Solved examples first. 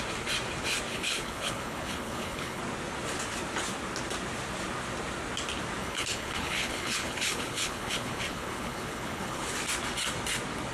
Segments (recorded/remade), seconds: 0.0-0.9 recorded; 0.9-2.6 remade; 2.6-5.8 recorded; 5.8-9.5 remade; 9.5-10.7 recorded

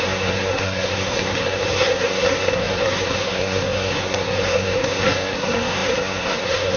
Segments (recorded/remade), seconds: 0.0-6.8 remade

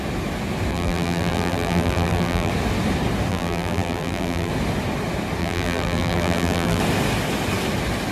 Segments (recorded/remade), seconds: 0.0-0.7 recorded; 0.7-2.5 remade; 2.5-3.3 recorded; 3.3-4.5 remade; 4.5-5.4 recorded; 5.4-6.8 remade; 6.8-8.1 recorded

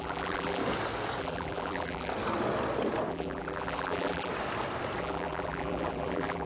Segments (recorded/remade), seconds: 0.0-0.6 remade; 0.6-1.2 recorded; 1.2-2.1 remade; 2.1-3.1 recorded; 3.1-4.3 remade; 4.3-5.0 recorded; 5.0-6.5 remade

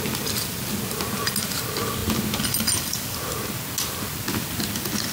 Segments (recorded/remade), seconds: 0.0-5.1 recorded

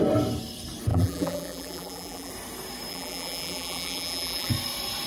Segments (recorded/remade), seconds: 0.0-0.9 recorded; 0.9-2.3 remade; 2.3-2.9 recorded; 2.9-4.5 remade; 4.5-5.1 recorded